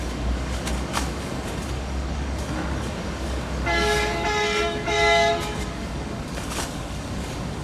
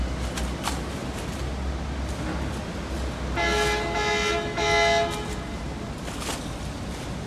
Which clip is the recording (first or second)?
second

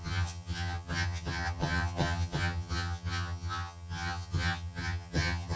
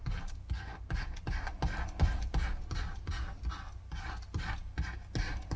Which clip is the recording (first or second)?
second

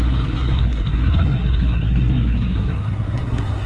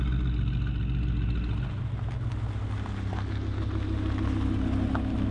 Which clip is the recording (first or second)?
second